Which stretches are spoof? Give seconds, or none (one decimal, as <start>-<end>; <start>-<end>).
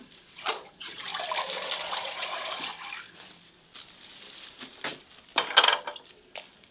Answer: 0.0-1.1; 1.8-2.7